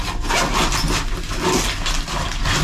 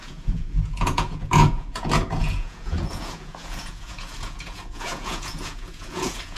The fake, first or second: second